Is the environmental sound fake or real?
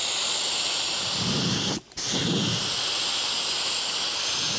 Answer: real